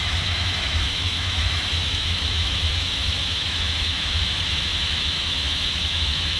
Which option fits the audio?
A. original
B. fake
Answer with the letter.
B